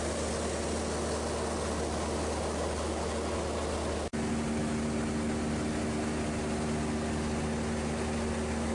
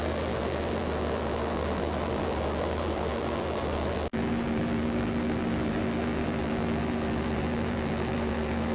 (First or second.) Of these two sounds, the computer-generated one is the second